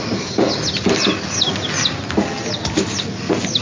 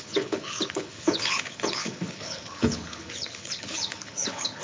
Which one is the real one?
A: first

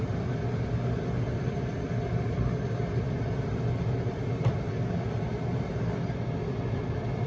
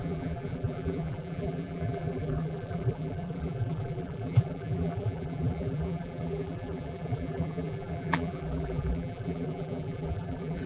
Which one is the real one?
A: first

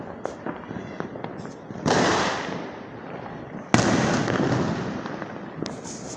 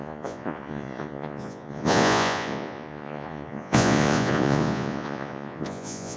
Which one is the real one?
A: first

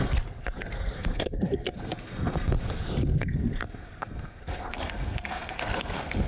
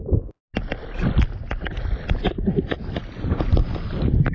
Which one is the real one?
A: second